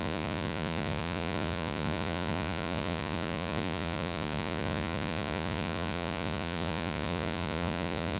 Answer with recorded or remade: remade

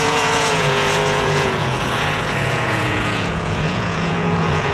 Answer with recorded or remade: remade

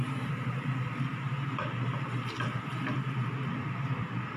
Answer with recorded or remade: remade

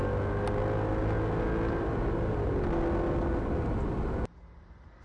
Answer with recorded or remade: recorded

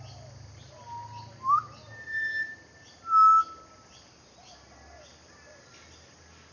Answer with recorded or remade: recorded